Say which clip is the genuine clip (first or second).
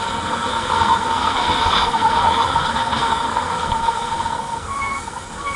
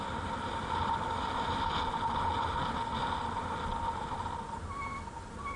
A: second